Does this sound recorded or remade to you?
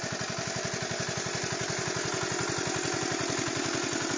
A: recorded